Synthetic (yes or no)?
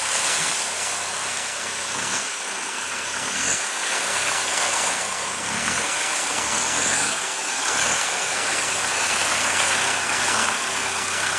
yes